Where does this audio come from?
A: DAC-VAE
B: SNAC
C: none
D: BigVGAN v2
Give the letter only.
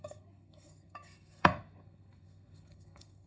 B